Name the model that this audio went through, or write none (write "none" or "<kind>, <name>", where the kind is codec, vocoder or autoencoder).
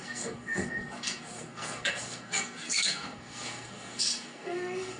codec, SNAC